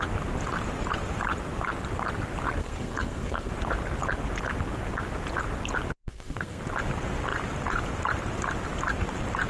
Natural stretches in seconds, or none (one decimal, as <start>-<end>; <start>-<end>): 0.0-2.6; 3.5-6.0; 6.6-9.5